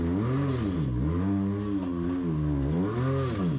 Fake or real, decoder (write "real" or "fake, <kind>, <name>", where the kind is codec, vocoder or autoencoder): real